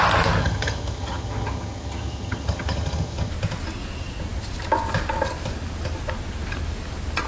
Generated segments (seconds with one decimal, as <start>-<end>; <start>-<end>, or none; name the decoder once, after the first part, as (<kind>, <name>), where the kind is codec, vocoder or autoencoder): 0.4-3.3 (vocoder, HiFi-GAN)